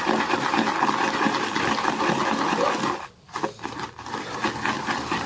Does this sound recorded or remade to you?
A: recorded